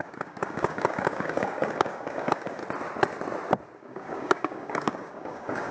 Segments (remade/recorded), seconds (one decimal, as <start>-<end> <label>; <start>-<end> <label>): 0.0-2.6 remade; 2.6-3.8 recorded; 3.8-5.7 remade